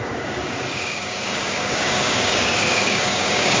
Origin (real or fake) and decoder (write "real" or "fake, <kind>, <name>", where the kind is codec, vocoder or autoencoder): fake, codec, DAC